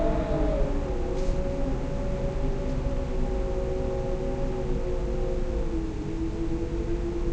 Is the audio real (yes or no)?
yes